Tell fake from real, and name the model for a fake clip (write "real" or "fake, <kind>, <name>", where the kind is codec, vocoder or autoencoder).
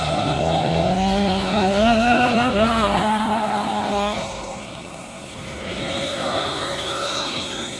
fake, codec, SNAC